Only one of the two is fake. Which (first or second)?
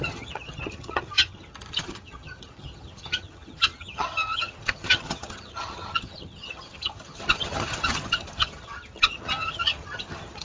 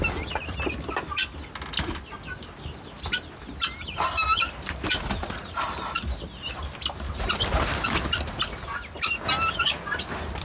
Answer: first